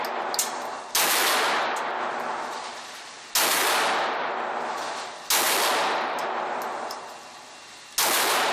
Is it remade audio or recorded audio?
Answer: recorded